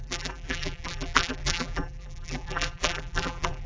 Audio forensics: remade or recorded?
remade